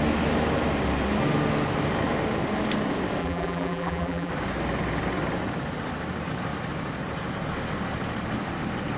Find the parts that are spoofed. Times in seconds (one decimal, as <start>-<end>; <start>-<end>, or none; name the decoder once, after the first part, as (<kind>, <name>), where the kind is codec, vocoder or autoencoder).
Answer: 3.2-4.3 (vocoder, BigVGAN v2)